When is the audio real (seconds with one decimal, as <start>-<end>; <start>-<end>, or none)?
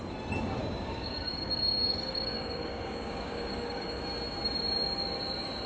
0.0-0.6; 4.0-5.7